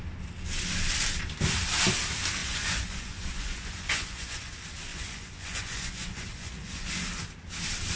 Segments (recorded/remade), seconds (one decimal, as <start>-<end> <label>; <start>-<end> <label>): 0.0-2.4 recorded; 2.4-4.5 remade; 4.5-4.9 recorded; 4.9-6.9 remade; 6.9-8.0 recorded